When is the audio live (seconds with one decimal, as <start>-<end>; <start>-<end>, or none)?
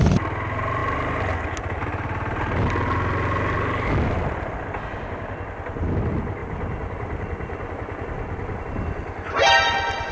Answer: 0.0-10.1